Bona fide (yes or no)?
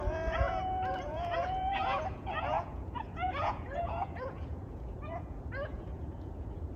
no